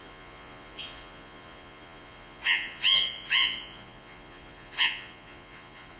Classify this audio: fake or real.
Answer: fake